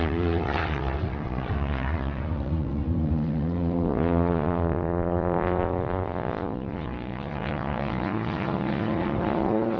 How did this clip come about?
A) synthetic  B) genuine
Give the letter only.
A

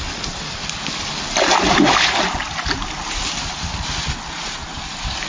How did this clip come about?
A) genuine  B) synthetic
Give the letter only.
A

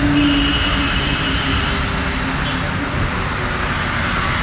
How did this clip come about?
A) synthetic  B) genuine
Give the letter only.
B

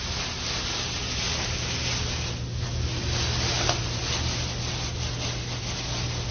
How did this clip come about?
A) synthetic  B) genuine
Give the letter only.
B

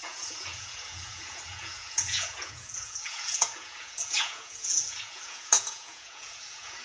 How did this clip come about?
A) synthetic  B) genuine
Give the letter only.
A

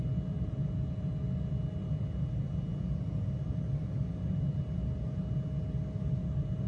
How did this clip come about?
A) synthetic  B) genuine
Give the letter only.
B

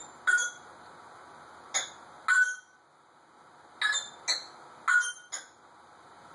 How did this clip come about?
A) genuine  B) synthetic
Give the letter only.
A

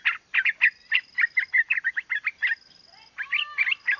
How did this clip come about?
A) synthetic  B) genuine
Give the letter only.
B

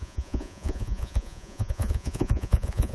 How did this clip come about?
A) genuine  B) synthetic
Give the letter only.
B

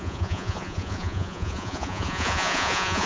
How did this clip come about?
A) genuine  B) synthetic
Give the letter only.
B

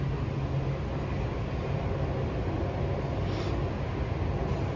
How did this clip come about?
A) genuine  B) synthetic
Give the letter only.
A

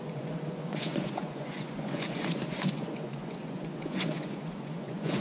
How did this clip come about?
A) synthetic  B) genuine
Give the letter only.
A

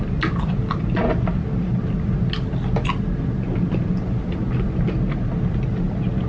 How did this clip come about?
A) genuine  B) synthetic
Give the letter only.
A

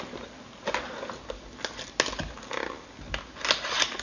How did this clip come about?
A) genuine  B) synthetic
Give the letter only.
A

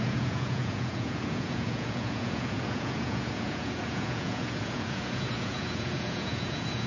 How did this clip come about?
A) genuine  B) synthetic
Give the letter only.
B